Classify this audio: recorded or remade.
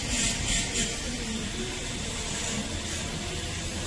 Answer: recorded